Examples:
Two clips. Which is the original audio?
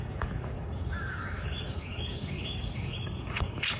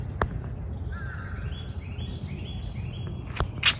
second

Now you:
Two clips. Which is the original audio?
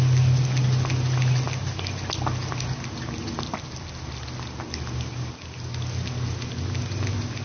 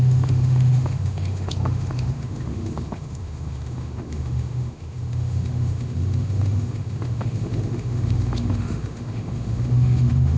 first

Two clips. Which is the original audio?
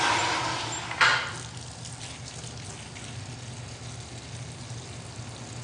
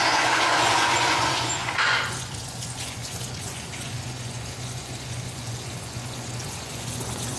first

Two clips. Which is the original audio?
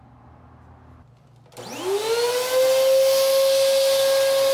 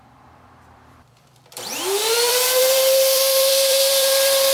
first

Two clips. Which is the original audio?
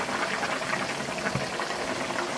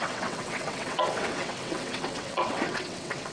first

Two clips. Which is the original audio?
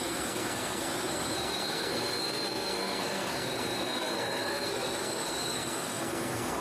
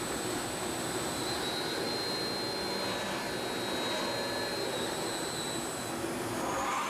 second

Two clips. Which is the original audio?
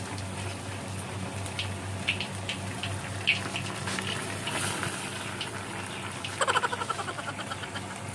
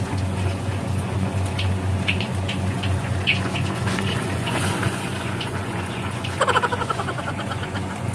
first